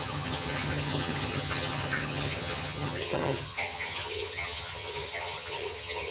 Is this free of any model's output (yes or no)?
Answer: no